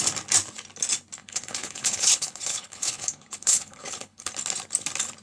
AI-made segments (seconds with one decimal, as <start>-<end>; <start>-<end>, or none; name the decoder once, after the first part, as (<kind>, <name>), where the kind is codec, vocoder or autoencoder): 1.2-4.3 (codec, HILCodec)